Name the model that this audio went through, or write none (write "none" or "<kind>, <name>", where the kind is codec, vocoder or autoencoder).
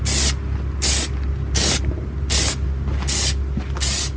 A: none